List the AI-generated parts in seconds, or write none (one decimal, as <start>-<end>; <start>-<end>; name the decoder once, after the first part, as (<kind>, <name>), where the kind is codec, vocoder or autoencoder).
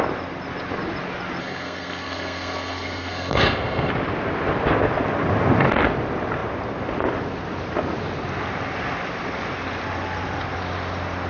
1.4-3.9 (codec, SNAC)